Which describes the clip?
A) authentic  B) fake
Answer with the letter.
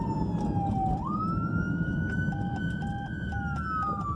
A